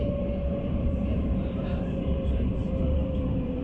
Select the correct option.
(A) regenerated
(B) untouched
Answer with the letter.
A